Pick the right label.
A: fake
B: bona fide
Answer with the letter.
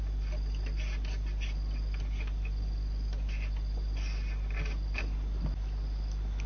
B